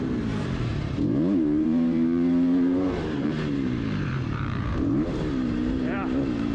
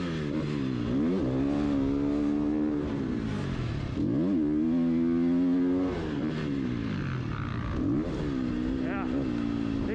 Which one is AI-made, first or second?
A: first